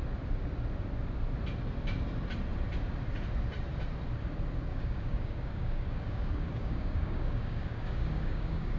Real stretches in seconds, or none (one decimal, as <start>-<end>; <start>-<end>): 0.0-4.7